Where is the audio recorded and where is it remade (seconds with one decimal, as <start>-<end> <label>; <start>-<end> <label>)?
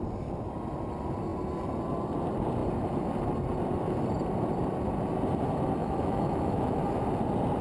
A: 0.0-5.8 recorded; 5.8-6.8 remade; 6.8-7.6 recorded